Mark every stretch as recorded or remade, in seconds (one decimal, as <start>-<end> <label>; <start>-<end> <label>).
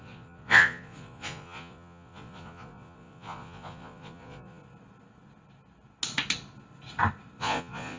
0.0-4.6 remade; 4.6-7.4 recorded; 7.4-8.0 remade